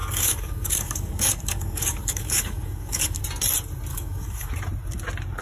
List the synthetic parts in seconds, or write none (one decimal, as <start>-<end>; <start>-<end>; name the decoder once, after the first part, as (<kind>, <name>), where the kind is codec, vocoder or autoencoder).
0.0-3.2 (codec, DAC); 3.9-4.5